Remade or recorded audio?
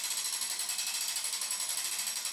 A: recorded